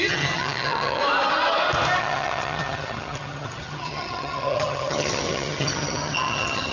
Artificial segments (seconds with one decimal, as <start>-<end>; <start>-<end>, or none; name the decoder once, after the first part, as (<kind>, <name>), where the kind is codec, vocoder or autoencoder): 0.0-1.0 (vocoder, HiFi-GAN); 2.0-6.7